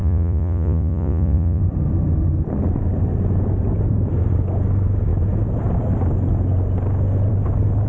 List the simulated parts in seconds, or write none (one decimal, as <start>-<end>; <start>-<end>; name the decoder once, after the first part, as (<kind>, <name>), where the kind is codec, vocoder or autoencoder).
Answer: 0.0-1.6 (vocoder, Vocos)